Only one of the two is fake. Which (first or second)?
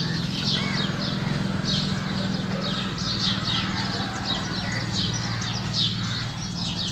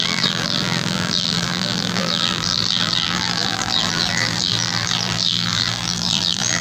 second